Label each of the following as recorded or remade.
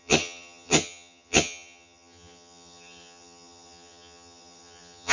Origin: remade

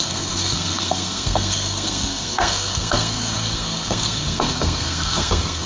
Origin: remade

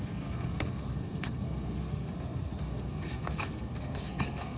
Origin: remade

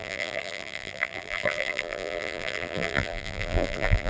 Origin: remade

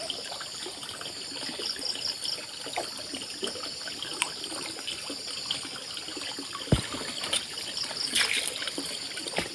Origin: recorded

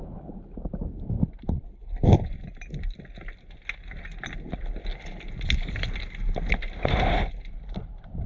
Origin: recorded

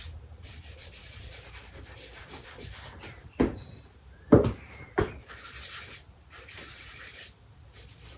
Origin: remade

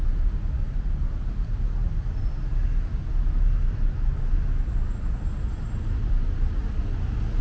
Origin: recorded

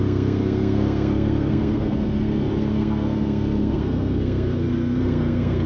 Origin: remade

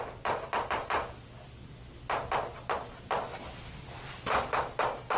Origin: recorded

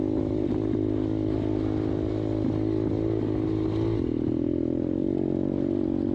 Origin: recorded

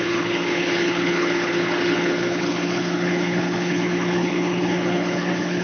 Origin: remade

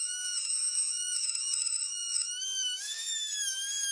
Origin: remade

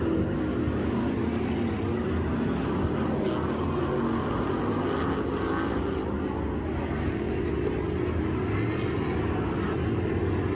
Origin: recorded